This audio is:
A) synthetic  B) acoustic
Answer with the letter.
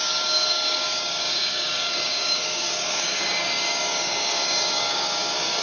A